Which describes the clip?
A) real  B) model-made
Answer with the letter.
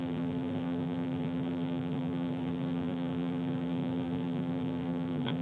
B